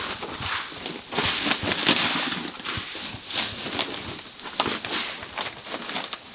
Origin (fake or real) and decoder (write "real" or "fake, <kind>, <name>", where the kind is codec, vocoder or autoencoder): real